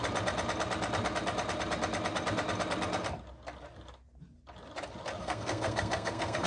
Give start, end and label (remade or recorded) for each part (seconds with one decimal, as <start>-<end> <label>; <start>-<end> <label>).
0.0-5.2 recorded; 5.2-6.5 remade

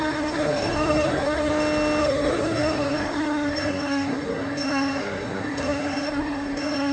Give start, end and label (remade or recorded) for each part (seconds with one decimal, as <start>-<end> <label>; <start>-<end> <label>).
0.0-1.5 remade; 1.5-2.0 recorded; 2.0-6.9 remade

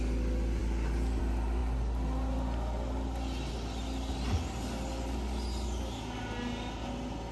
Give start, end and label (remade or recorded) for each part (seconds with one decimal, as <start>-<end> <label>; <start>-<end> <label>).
0.0-7.3 recorded

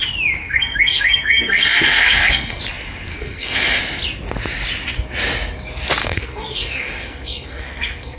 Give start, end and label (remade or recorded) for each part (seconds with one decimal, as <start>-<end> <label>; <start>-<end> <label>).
0.0-0.4 recorded; 0.4-2.6 remade; 2.6-3.1 recorded; 3.1-3.8 remade; 3.8-6.0 recorded; 6.0-8.2 remade

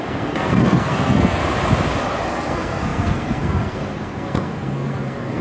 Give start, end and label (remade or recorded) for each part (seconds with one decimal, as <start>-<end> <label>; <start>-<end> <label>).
0.0-1.4 remade; 1.4-2.3 recorded; 2.3-5.4 remade

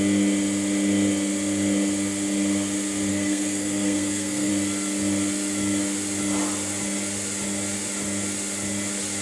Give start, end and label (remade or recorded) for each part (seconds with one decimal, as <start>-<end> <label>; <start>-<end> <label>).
0.0-3.1 recorded; 3.1-4.5 remade; 4.5-9.2 recorded